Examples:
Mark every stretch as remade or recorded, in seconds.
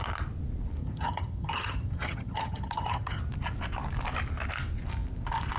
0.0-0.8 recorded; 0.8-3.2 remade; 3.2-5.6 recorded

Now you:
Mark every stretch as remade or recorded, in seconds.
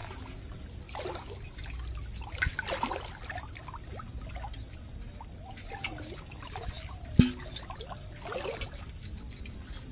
0.0-9.9 recorded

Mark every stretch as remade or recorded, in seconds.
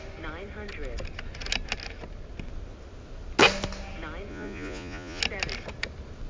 0.0-4.3 recorded; 4.3-5.2 remade; 5.2-6.3 recorded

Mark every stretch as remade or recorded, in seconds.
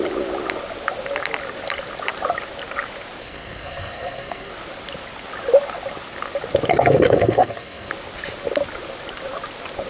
0.0-3.2 recorded; 3.2-4.5 remade; 4.5-6.7 recorded; 6.7-7.9 remade; 7.9-9.9 recorded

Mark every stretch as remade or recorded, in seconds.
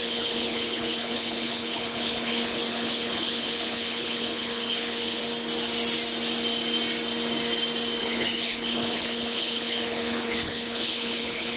0.0-5.2 remade; 5.2-8.0 recorded; 8.0-11.6 remade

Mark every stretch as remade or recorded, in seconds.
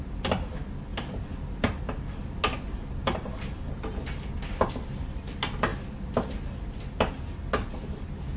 0.0-8.4 recorded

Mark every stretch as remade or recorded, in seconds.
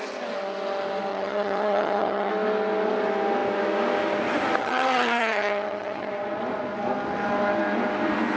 0.0-1.1 recorded; 1.1-2.3 remade; 2.3-4.6 recorded; 4.6-6.1 remade; 6.1-8.4 recorded